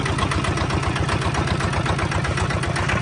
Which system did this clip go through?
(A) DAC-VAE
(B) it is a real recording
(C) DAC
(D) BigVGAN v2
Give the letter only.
B